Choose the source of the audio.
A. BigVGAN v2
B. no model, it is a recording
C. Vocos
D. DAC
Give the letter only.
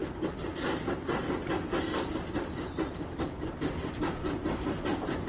B